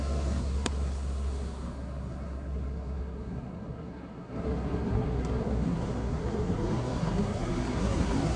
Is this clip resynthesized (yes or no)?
yes